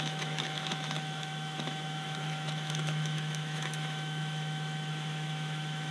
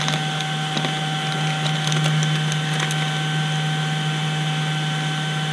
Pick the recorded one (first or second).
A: second